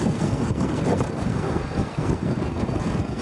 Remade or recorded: remade